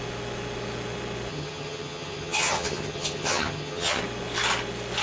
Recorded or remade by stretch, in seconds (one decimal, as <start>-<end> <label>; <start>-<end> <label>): 0.0-1.3 recorded; 1.3-4.0 remade; 4.0-5.0 recorded